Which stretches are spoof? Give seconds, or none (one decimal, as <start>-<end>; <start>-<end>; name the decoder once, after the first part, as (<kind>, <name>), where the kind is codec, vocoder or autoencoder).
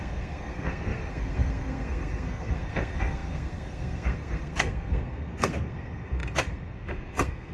0.0-7.5 (codec, SNAC)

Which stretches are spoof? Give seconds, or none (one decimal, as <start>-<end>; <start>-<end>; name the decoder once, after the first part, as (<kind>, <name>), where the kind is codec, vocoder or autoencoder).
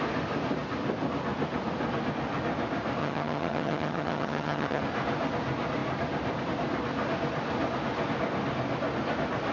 3.0-4.8 (vocoder, HiFi-GAN)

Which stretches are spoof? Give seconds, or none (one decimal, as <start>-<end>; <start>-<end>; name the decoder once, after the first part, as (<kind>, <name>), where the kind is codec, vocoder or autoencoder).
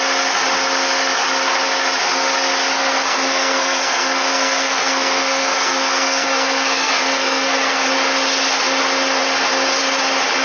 2.7-7.9 (codec, SNAC)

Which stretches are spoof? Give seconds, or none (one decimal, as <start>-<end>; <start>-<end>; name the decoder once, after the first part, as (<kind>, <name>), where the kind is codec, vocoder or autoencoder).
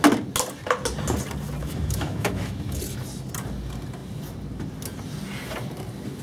1.6-2.8 (autoencoder, DAC-VAE)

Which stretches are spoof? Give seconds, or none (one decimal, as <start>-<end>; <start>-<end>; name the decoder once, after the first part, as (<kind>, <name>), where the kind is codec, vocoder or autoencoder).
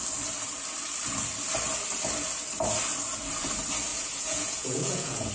3.9-5.3 (vocoder, Vocos)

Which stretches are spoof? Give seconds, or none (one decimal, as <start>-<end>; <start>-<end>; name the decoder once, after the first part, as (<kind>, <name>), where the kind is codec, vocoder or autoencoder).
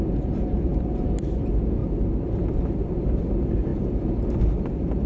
none